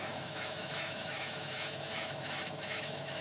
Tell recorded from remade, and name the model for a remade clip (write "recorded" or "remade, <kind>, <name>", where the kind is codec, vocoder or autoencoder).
remade, autoencoder, DAC-VAE